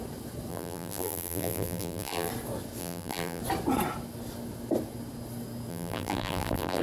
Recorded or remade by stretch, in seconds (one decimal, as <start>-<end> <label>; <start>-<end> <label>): 0.0-0.5 recorded; 0.5-2.3 remade; 2.3-2.8 recorded; 2.8-3.4 remade; 3.4-5.7 recorded; 5.7-6.8 remade